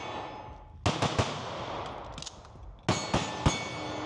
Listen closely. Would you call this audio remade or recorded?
recorded